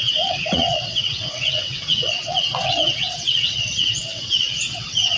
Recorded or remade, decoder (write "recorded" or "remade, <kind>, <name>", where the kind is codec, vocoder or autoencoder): remade, vocoder, WaveNeXt